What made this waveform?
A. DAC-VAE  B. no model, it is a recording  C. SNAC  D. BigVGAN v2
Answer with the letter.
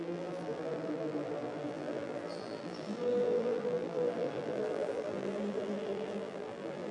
D